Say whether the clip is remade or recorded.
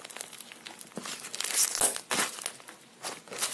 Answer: recorded